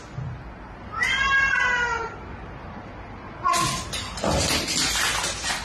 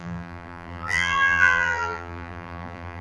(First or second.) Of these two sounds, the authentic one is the first